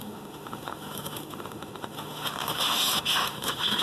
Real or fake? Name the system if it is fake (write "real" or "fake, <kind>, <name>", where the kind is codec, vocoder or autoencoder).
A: fake, autoencoder, DAC-VAE